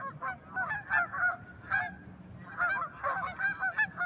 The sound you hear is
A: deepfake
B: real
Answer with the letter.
B